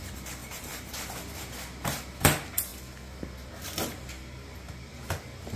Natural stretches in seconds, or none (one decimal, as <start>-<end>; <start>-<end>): 0.0-0.4; 1.1-5.6